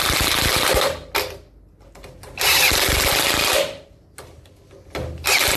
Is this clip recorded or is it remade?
recorded